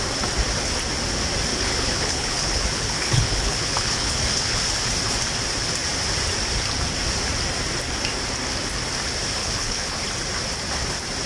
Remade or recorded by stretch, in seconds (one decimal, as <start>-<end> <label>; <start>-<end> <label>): 0.0-1.5 recorded; 1.5-4.6 remade; 4.6-9.4 recorded; 9.4-10.0 remade; 10.0-11.3 recorded